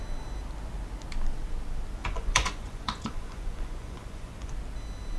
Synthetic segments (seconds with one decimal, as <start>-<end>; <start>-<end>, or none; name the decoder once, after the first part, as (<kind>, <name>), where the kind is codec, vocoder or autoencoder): 2.0-4.5 (vocoder, Vocos)